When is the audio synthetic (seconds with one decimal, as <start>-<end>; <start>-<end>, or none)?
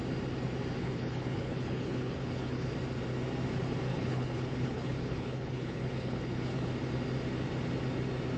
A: 0.8-2.7; 3.9-6.7